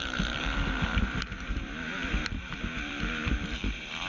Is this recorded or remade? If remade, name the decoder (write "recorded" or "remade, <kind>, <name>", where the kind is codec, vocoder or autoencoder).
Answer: remade, vocoder, BigVGAN v2